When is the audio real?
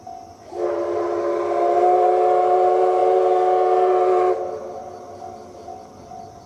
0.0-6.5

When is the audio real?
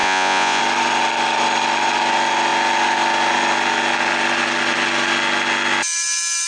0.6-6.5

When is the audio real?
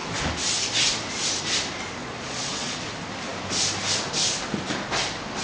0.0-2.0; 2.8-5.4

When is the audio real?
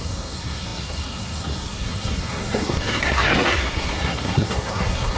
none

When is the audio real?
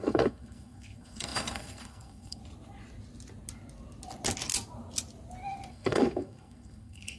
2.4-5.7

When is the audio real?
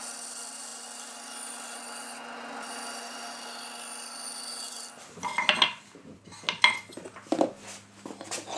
0.0-8.6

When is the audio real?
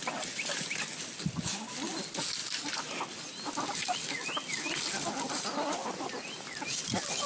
0.0-7.3